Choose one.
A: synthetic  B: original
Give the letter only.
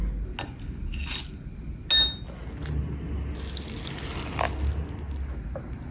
B